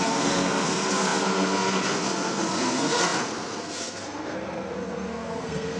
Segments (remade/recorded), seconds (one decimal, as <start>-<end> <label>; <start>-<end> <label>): 0.0-5.8 remade